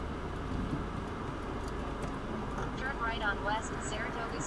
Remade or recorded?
recorded